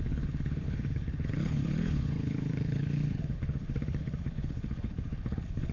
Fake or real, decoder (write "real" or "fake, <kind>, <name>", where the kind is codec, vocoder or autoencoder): fake, codec, HILCodec